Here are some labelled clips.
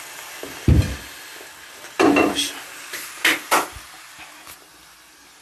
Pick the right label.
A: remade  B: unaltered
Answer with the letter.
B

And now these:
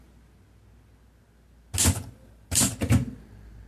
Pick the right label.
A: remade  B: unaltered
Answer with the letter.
B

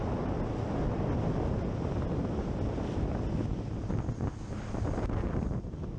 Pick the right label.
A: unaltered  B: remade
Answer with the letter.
A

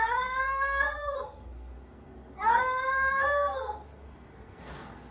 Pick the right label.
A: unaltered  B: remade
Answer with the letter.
B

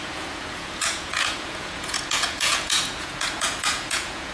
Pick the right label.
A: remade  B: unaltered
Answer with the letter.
A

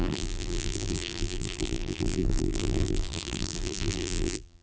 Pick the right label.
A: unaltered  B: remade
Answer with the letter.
B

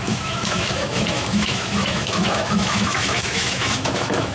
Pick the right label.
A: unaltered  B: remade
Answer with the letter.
B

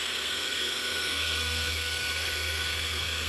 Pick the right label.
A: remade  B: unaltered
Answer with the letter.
A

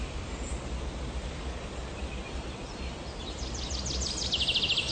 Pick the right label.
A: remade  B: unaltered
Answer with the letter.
A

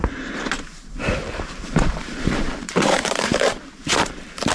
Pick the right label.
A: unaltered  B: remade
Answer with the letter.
B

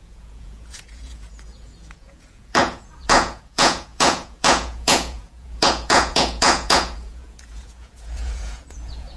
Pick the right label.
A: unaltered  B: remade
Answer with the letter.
B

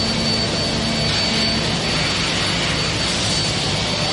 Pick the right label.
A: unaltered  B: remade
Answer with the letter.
A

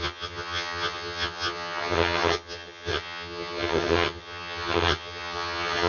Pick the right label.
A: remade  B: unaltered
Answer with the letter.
A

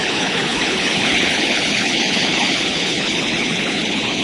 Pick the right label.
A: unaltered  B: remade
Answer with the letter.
B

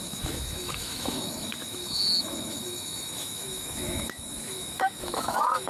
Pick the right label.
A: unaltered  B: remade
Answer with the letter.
B